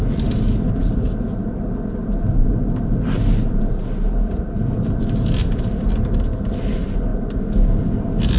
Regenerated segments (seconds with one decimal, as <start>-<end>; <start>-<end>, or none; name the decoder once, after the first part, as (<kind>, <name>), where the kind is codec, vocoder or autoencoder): none